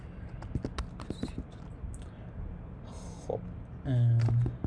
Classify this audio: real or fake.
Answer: real